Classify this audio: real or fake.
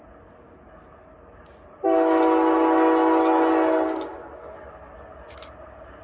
real